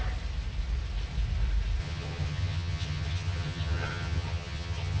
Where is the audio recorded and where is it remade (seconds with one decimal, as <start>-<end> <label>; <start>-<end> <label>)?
0.0-1.8 recorded; 1.8-5.0 remade